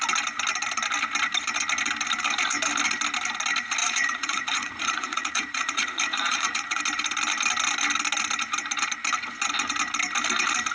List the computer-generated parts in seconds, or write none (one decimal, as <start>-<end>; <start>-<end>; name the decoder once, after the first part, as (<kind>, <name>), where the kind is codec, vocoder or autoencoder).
3.8-6.8 (vocoder, Vocos)